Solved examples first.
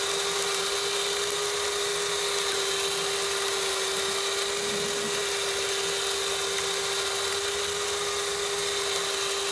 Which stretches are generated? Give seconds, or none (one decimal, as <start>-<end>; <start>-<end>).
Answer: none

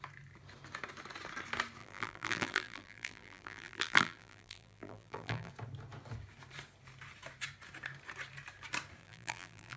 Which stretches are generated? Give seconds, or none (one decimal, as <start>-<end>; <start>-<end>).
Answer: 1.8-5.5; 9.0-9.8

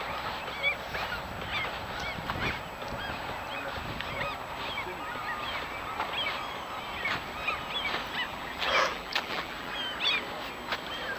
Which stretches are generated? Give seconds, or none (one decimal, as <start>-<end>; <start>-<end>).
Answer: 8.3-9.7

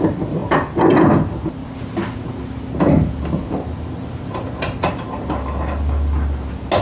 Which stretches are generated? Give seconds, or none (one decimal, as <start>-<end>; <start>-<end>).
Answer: none

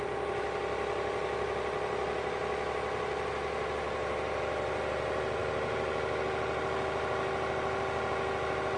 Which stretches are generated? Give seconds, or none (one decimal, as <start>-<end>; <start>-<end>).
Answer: 5.4-6.2

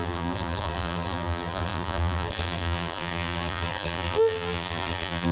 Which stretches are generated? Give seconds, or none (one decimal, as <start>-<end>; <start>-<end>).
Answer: 0.0-5.3

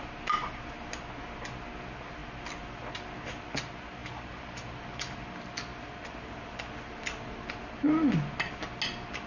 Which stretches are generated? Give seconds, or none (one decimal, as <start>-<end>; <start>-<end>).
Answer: 4.0-4.9